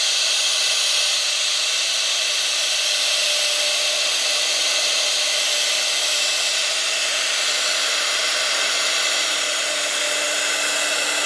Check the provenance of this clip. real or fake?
real